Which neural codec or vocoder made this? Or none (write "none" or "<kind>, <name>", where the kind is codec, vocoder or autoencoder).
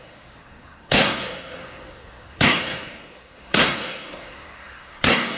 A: codec, SNAC